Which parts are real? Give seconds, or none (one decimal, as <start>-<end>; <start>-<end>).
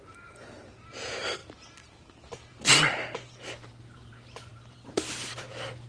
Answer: 1.4-2.5